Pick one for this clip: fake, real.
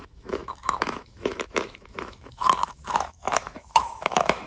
fake